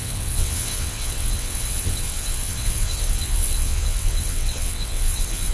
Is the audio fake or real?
fake